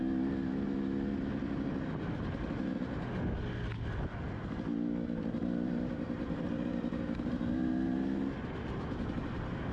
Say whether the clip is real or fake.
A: real